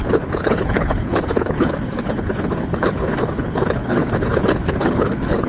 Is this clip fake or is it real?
fake